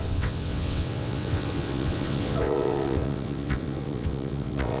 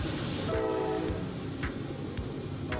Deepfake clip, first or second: first